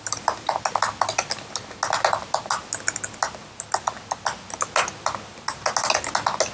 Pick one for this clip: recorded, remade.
recorded